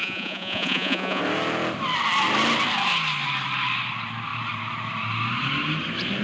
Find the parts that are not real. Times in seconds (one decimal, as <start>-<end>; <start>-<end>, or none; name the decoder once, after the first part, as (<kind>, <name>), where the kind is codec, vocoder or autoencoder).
0.0-1.2 (vocoder, Vocos)